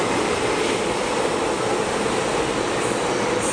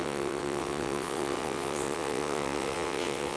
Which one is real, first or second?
first